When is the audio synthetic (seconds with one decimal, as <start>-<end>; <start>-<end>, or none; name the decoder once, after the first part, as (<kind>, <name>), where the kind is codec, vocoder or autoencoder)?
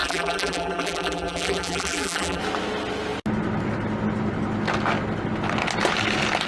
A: 0.0-2.4 (vocoder, BigVGAN v2)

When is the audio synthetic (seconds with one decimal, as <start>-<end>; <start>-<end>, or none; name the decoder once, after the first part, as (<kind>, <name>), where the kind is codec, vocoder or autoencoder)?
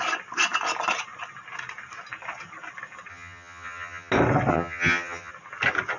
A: 3.1-4.1 (vocoder, HiFi-GAN); 4.5-5.3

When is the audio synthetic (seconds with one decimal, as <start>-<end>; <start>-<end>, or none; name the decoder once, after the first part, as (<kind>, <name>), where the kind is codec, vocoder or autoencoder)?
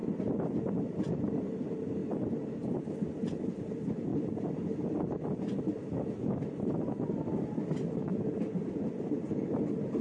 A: 0.0-2.0 (vocoder, BigVGAN v2); 3.5-8.1; 8.7-10.0